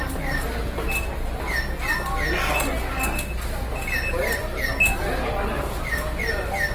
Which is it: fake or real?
real